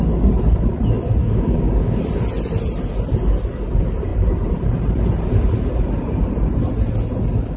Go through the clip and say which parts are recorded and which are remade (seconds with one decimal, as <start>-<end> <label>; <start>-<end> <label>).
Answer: 0.0-1.2 recorded; 1.2-2.0 remade; 2.0-7.6 recorded